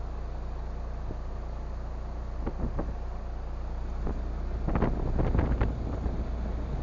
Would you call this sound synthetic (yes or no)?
no